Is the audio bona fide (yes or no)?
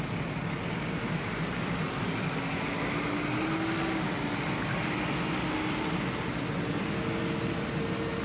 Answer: yes